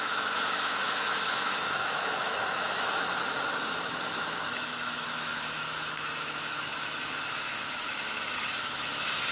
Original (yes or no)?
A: no